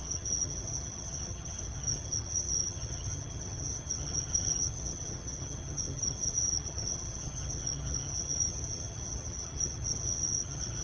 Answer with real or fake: fake